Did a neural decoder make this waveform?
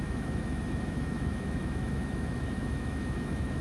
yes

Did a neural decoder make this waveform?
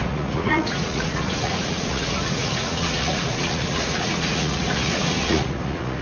yes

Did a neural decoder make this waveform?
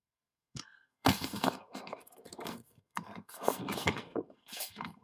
yes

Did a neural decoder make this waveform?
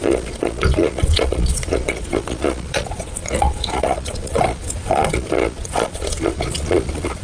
yes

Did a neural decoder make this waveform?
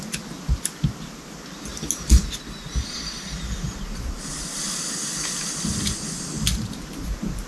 no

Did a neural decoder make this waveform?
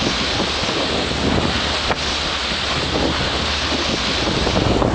no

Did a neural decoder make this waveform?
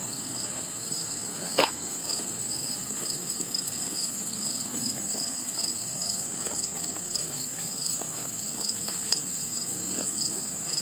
yes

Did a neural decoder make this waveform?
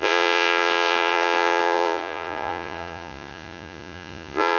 yes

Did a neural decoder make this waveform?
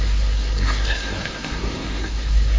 yes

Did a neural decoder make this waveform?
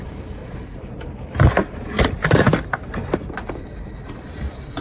yes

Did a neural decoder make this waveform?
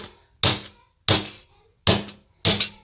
no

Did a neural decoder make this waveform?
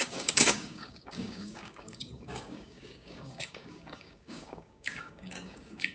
yes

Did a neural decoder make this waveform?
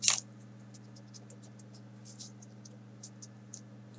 no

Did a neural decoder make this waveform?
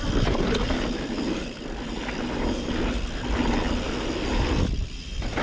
no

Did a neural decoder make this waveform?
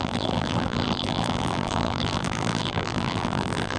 yes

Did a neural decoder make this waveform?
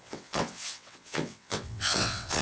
yes